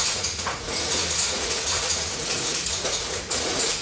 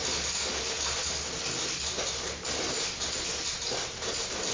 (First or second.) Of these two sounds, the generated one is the first